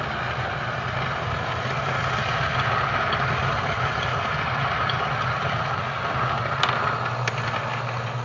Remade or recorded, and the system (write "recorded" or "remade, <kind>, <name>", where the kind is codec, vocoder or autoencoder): recorded